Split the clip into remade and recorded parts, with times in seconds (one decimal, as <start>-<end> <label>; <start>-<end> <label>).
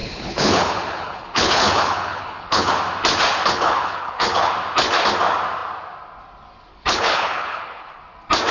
0.0-2.7 remade; 2.7-3.5 recorded; 3.5-4.5 remade; 4.5-6.7 recorded; 6.7-8.0 remade; 8.0-8.5 recorded